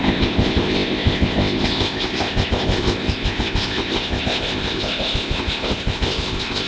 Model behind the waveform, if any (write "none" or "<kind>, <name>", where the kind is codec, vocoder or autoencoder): codec, ZipCodec